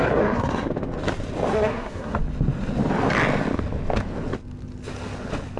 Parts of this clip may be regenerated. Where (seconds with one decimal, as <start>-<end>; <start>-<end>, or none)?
0.0-0.7; 1.5-2.2